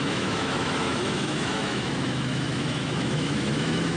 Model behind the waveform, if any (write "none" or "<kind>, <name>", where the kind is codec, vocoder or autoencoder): autoencoder, DAC-VAE